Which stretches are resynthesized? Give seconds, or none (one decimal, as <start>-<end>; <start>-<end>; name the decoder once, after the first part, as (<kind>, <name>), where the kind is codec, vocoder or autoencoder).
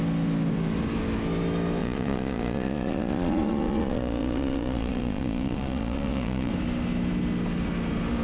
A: 1.8-6.5 (vocoder, Vocos)